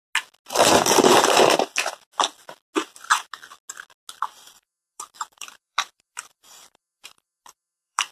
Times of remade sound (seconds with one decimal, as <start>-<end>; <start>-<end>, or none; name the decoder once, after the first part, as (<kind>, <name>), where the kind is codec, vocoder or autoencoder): 4.2-8.1 (vocoder, BigVGAN v2)